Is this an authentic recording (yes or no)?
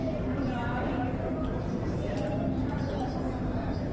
no